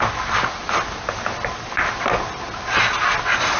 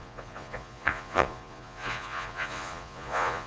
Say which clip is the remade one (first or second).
second